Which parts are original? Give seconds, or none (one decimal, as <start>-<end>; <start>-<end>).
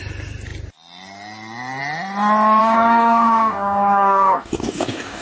0.0-2.6